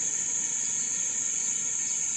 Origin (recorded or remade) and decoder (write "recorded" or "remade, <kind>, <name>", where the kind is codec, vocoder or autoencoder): remade, vocoder, Vocos